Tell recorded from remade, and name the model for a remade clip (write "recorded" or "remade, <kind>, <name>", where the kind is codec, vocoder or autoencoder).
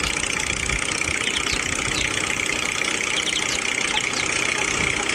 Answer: recorded